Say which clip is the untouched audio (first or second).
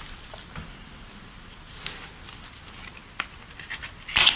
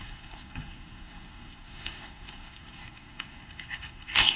first